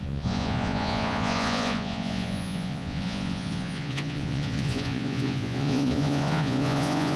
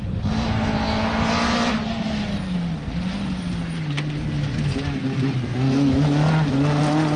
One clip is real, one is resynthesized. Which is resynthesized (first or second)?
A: first